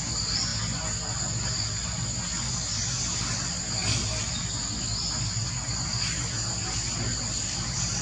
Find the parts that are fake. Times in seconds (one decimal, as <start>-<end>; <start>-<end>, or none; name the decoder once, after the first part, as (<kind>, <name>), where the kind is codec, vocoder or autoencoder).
3.8-4.4 (vocoder, BigVGAN v2)